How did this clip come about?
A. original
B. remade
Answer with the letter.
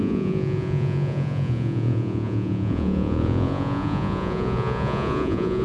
B